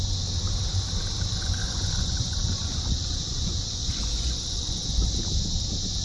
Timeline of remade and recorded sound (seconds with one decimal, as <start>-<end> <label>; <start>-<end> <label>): 0.0-1.3 recorded; 1.3-4.9 remade; 4.9-6.0 recorded